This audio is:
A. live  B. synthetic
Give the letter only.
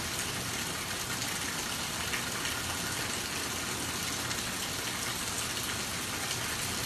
A